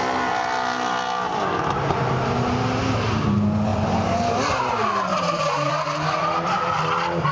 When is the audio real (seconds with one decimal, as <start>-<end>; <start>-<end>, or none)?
0.0-3.7; 4.3-5.1; 5.7-7.3